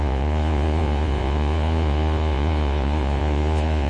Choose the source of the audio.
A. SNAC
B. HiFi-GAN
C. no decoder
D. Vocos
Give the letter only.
D